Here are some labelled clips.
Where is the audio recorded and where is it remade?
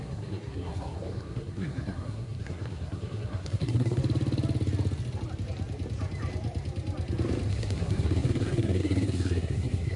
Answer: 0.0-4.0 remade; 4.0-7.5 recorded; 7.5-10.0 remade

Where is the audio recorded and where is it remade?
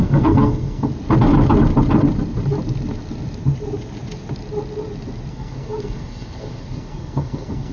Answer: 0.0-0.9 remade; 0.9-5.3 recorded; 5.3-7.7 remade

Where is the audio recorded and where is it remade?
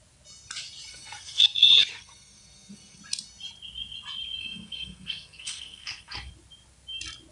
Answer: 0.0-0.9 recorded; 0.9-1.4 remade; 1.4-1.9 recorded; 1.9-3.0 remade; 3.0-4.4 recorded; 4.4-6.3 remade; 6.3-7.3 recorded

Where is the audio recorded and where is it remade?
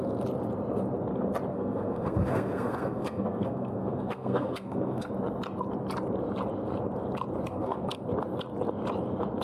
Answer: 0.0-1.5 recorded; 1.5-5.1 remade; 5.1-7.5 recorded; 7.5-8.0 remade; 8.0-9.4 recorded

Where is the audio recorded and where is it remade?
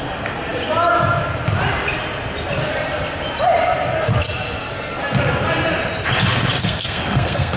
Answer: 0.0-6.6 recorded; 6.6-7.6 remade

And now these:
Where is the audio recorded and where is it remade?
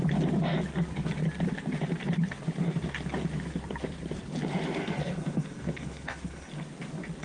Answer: 0.0-4.8 recorded; 4.8-6.5 remade; 6.5-7.2 recorded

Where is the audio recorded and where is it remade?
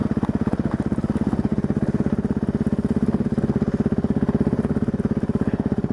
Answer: 0.0-5.9 recorded